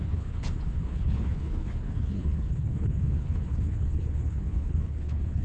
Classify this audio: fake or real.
fake